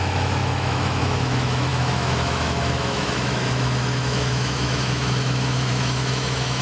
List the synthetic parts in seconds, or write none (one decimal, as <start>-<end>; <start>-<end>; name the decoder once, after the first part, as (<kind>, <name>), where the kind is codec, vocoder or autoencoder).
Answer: 0.0-6.6 (autoencoder, DAC-VAE)

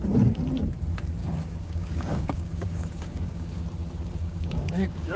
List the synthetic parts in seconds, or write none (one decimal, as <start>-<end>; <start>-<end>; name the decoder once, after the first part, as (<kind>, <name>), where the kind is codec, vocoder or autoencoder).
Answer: 1.2-3.6 (codec, DAC); 4.2-5.2

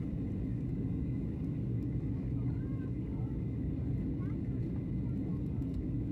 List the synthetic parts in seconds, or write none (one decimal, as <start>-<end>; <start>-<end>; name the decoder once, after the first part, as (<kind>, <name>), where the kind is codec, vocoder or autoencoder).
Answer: 0.5-4.2 (codec, DAC); 5.3-6.1

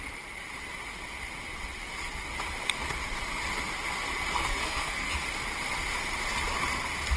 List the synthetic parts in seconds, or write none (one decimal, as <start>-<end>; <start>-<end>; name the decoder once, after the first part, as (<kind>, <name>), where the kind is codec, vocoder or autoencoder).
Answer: 4.4-5.1 (codec, SNAC)